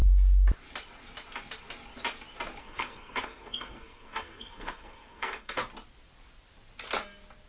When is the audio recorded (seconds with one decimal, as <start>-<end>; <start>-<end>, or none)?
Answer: 0.0-2.6; 5.6-7.5